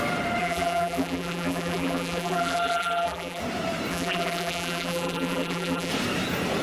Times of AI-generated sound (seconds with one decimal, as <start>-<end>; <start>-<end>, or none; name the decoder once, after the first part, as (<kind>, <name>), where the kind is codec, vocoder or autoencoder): 0.4-3.4 (vocoder, BigVGAN v2); 3.9-5.9